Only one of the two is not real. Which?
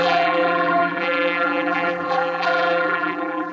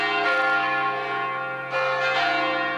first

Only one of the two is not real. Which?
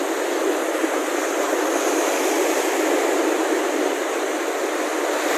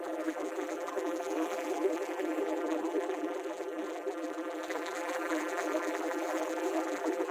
second